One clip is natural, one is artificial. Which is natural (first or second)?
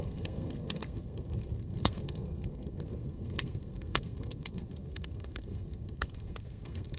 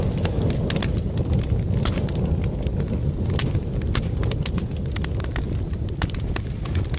second